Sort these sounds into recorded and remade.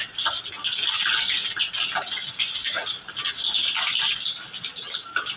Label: recorded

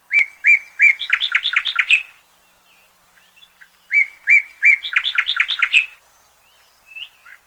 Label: recorded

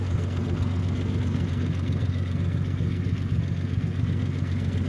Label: remade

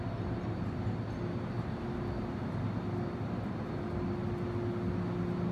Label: recorded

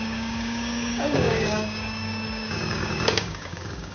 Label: remade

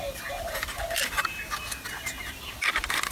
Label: recorded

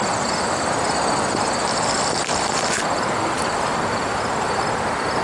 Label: remade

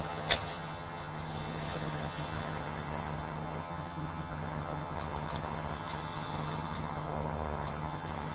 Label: remade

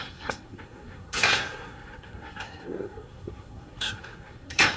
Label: remade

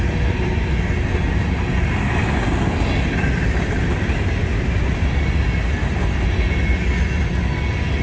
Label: recorded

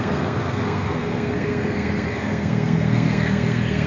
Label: remade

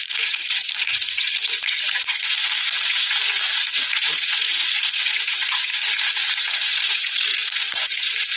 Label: remade